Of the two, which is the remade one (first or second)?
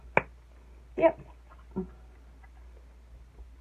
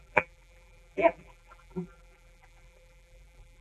second